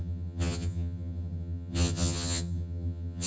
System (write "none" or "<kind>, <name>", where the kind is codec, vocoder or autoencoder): vocoder, HiFi-GAN